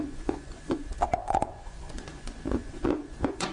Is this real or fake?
fake